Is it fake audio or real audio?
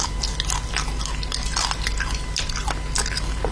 real